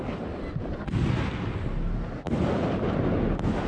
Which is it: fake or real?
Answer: real